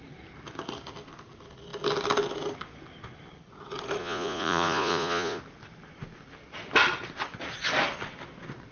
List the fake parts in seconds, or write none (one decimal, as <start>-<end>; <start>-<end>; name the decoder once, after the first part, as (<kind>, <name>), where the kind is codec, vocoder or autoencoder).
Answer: 4.0-5.4 (vocoder, Vocos)